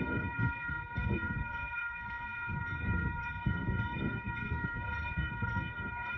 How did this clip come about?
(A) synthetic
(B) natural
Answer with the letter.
A